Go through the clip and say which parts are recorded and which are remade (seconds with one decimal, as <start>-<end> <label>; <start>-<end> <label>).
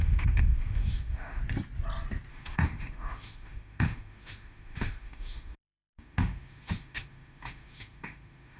0.0-1.4 remade; 1.4-2.3 recorded; 2.3-8.6 remade